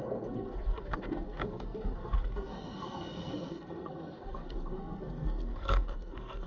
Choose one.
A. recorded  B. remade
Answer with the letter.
B